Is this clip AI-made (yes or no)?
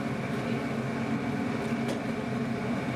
no